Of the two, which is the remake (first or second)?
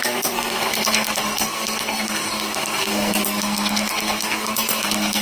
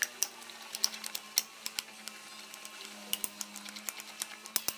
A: first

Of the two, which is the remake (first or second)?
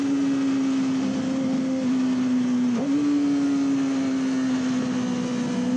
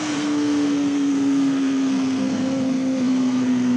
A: second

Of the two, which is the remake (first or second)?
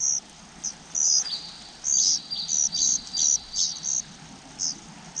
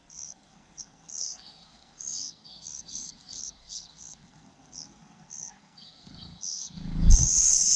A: second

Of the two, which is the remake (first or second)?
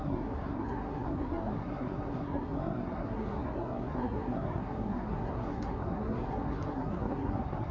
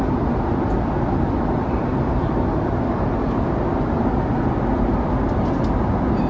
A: first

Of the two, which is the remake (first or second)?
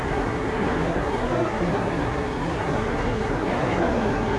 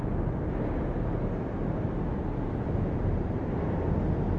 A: first